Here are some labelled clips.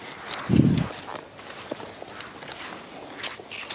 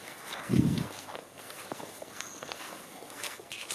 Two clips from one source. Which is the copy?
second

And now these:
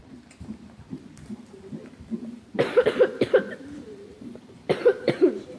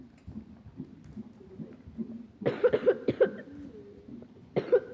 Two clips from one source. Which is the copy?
first